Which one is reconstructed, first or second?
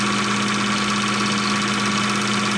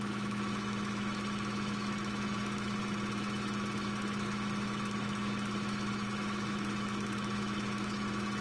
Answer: second